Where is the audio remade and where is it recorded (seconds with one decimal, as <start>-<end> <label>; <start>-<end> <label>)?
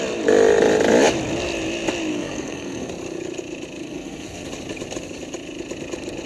0.0-2.1 recorded; 2.1-2.9 remade; 2.9-3.8 recorded; 3.8-4.5 remade; 4.5-6.3 recorded